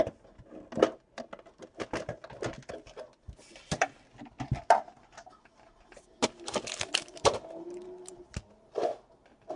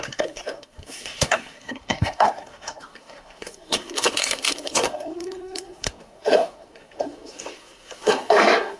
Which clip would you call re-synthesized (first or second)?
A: second